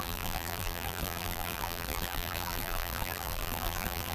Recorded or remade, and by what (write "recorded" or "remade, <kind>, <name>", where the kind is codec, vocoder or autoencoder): remade, vocoder, BigVGAN v2